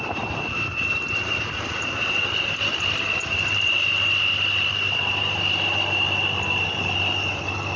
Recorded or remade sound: recorded